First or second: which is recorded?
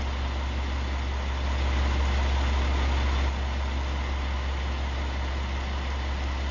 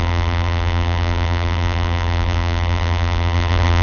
first